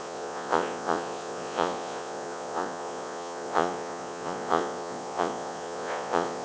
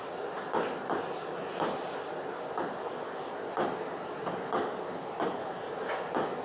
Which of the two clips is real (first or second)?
second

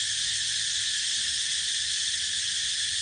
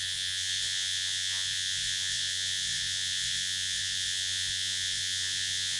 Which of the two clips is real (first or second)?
first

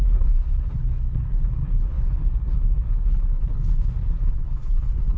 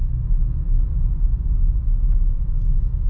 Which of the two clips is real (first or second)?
second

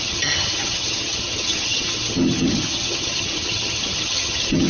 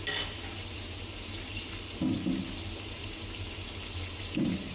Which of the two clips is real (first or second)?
second